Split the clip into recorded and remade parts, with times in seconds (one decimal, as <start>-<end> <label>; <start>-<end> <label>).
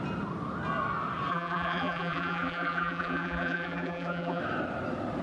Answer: 0.0-1.3 recorded; 1.3-4.4 remade; 4.4-5.2 recorded